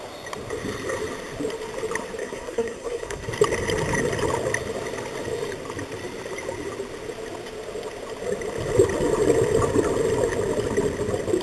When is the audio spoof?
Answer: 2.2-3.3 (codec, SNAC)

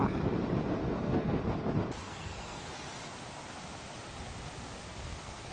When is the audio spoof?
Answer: 0.8-1.4 (codec, SNAC); 2.0-2.7; 4.8-5.5

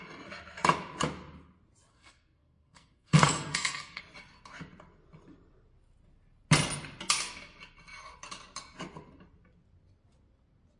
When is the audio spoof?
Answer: 1.9-4.0 (codec, SNAC)

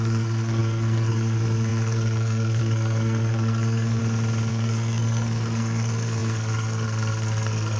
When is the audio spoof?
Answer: 0.0-4.0 (codec, SNAC); 4.5-7.8